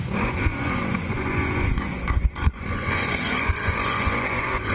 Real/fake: fake